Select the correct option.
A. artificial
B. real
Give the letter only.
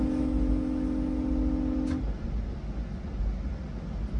B